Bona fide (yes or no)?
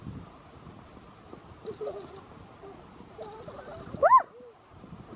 yes